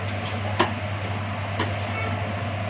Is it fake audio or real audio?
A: real